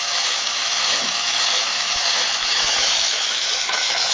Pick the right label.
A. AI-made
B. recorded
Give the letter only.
A